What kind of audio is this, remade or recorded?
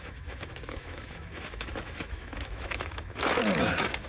remade